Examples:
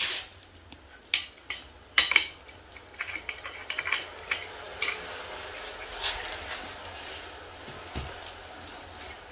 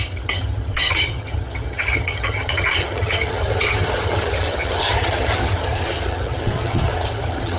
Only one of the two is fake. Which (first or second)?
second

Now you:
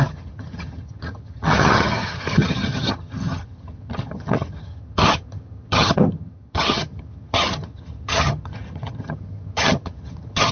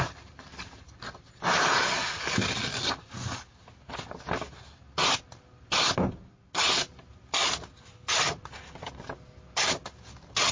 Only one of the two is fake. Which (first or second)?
first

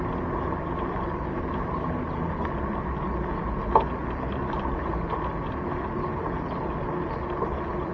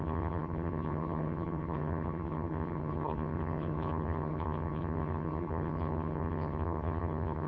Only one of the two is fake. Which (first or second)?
second